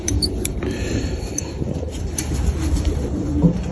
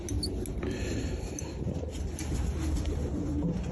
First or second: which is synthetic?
first